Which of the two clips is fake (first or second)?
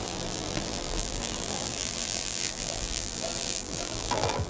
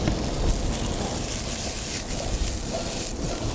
first